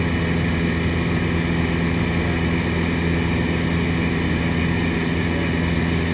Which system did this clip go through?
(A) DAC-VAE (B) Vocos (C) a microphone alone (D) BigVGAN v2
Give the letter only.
C